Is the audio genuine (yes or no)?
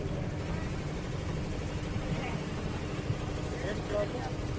yes